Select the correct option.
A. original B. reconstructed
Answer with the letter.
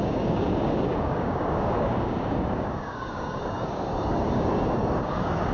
B